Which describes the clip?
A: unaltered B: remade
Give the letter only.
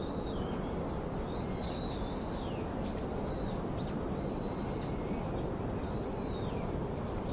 A